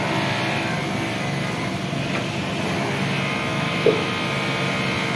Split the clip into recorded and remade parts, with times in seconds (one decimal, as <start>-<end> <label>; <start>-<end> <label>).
0.0-3.5 recorded; 3.5-4.1 remade; 4.1-5.2 recorded